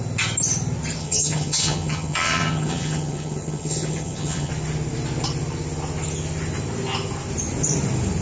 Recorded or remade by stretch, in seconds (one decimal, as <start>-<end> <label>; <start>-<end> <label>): 0.0-1.0 recorded; 1.0-4.5 remade; 4.5-8.2 recorded